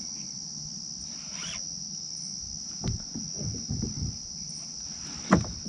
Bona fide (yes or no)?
yes